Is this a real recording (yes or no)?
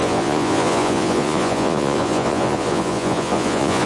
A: no